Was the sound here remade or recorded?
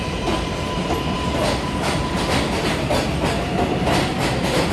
recorded